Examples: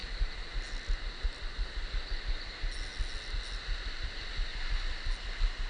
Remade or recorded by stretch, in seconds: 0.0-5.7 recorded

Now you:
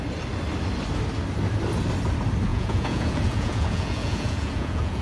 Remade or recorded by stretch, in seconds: 0.0-2.5 recorded; 2.5-5.0 remade

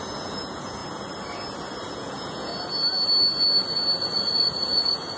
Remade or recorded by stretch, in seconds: 0.0-0.8 remade; 0.8-1.9 recorded; 1.9-2.5 remade; 2.5-4.0 recorded; 4.0-5.2 remade

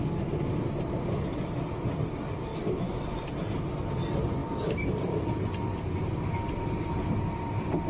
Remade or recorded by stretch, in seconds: 0.0-7.9 recorded

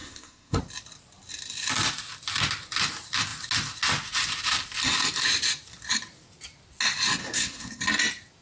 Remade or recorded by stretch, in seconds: 0.0-0.6 remade; 0.6-7.2 recorded; 7.2-7.8 remade; 7.8-8.4 recorded

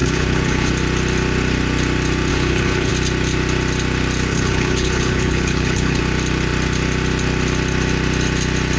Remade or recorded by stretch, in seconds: 0.0-0.7 remade; 0.7-2.3 recorded; 2.3-2.9 remade; 2.9-4.3 recorded; 4.3-6.0 remade; 6.0-8.8 recorded

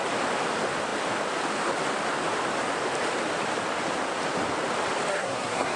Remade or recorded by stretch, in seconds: 0.0-5.1 recorded; 5.1-5.8 remade

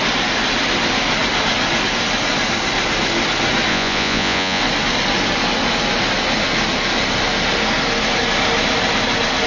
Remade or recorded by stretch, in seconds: 0.0-3.7 recorded; 3.7-4.6 remade; 4.6-9.5 recorded